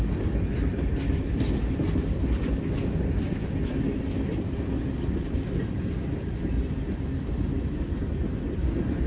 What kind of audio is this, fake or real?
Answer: real